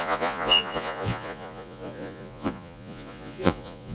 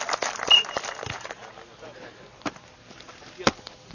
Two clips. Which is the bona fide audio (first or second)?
second